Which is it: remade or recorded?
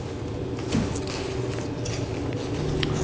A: recorded